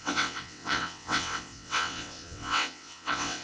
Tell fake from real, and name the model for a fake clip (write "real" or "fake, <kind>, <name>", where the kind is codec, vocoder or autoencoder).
fake, vocoder, WaveNeXt